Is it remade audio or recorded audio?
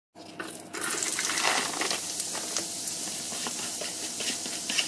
recorded